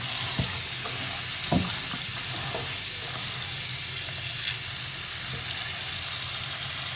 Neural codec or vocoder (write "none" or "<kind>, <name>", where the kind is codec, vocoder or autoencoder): none